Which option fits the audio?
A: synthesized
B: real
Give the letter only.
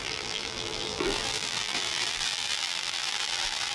A